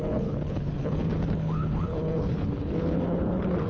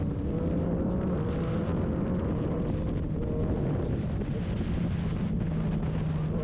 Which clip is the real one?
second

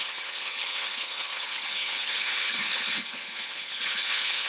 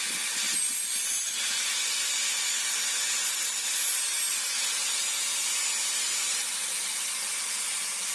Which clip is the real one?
second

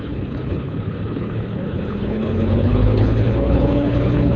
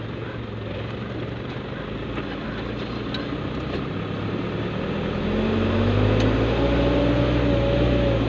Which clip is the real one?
second